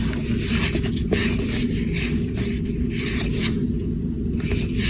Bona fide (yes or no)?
yes